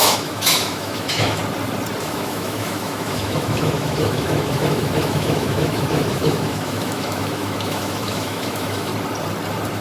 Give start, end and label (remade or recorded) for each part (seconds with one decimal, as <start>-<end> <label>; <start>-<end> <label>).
0.0-1.4 remade; 1.4-2.0 recorded; 2.0-8.9 remade; 8.9-9.8 recorded

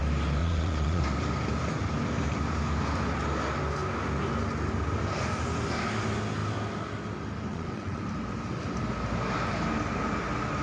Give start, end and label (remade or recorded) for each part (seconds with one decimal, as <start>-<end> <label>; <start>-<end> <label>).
0.0-0.4 recorded; 0.4-1.0 remade; 1.0-7.5 recorded; 7.5-8.0 remade; 8.0-10.6 recorded

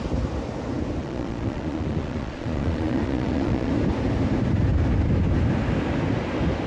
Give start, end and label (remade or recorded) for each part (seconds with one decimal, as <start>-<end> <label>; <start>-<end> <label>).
0.0-1.0 recorded; 1.0-3.7 remade; 3.7-6.7 recorded